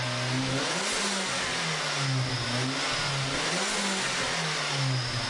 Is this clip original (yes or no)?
yes